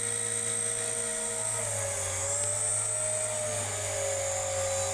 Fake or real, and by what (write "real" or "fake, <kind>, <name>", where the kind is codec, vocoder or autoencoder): real